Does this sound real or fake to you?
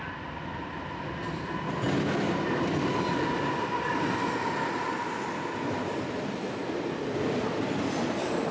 real